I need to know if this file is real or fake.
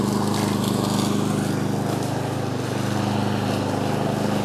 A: real